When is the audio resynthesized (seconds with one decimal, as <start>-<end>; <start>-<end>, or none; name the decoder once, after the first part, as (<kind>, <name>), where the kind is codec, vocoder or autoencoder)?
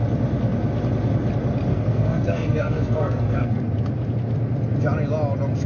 1.7-3.6 (codec, SNAC)